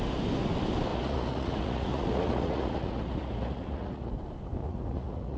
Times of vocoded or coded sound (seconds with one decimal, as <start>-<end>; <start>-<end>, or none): 0.9-4.1; 4.6-5.4